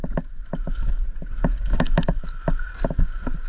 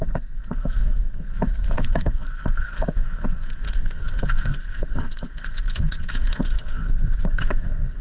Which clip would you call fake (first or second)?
second